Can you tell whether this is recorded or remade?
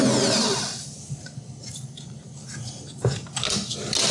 recorded